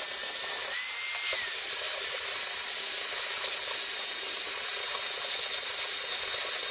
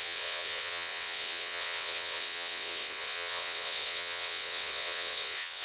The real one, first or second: first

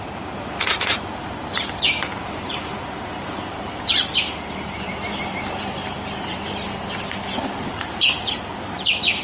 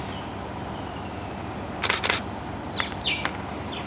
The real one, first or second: second